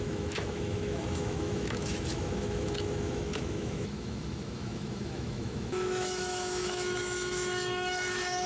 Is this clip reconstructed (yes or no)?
yes